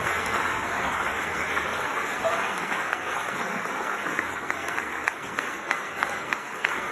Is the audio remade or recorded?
remade